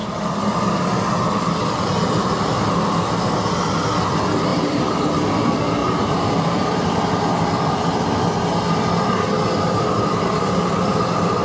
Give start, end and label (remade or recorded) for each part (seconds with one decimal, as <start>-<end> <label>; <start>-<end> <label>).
0.0-4.5 recorded; 4.5-5.1 remade; 5.1-5.8 recorded; 5.8-6.6 remade; 6.6-11.4 recorded

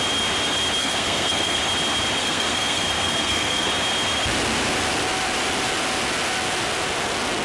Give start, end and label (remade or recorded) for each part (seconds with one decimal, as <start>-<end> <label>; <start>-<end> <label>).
0.0-0.8 recorded; 0.8-1.6 remade; 1.6-2.2 recorded; 2.2-3.7 remade; 3.7-7.4 recorded

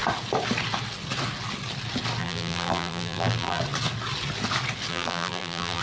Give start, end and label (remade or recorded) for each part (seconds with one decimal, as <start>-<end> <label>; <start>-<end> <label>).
0.0-2.2 recorded; 2.2-3.6 remade; 3.6-4.9 recorded; 4.9-5.8 remade

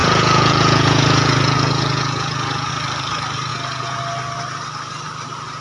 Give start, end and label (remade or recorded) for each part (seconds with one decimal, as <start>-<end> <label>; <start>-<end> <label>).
0.0-2.7 remade; 2.7-3.5 recorded; 3.5-4.0 remade; 4.0-5.6 recorded

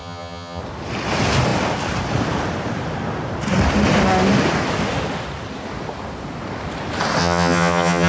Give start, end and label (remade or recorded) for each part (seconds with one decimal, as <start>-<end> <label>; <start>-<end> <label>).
0.0-0.6 remade; 0.6-7.2 recorded; 7.2-8.1 remade

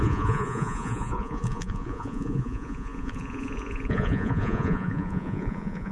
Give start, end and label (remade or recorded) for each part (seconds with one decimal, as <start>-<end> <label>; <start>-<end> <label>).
0.0-5.9 remade

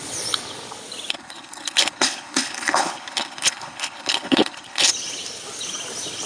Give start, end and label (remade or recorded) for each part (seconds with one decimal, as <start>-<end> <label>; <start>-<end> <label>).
0.0-1.1 recorded; 1.1-4.9 remade; 4.9-6.3 recorded